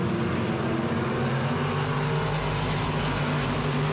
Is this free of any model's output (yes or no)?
yes